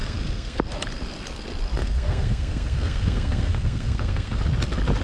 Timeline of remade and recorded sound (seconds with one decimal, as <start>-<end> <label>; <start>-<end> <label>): 0.0-0.6 remade; 0.6-1.8 recorded; 1.8-4.4 remade; 4.4-5.0 recorded